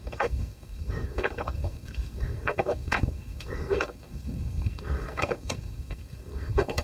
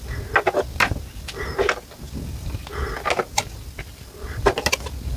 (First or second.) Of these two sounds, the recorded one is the second